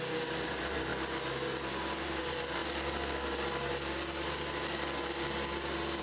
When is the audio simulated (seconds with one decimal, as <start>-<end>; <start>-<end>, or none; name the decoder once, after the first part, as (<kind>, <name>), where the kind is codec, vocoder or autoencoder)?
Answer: 0.0-0.9 (vocoder, BigVGAN v2); 2.2-2.6